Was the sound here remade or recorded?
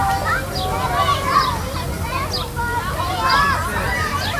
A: recorded